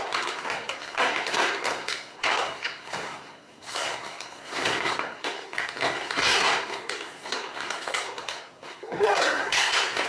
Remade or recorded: remade